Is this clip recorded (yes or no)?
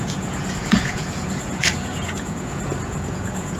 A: no